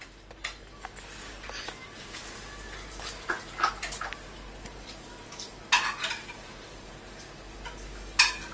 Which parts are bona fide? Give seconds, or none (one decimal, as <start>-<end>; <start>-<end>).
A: 0.0-8.5